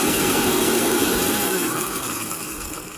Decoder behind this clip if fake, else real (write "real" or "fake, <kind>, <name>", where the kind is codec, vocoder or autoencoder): fake, codec, SNAC